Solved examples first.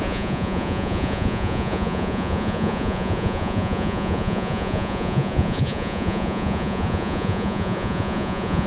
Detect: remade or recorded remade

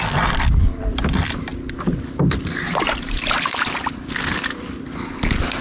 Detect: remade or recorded recorded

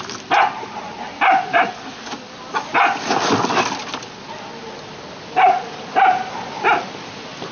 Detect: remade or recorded recorded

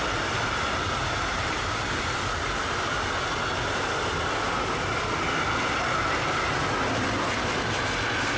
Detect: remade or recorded recorded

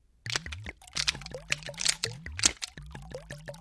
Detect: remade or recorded recorded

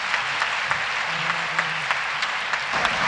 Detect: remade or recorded recorded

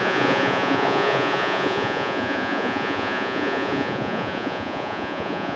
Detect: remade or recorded remade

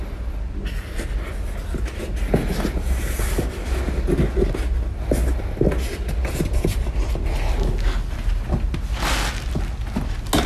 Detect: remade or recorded recorded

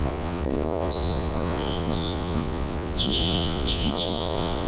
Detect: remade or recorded remade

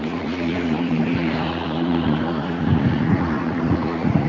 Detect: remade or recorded remade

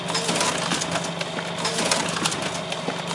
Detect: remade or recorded recorded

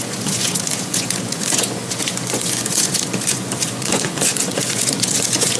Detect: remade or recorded remade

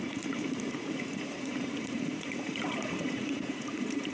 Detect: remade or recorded remade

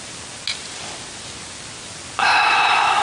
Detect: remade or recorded recorded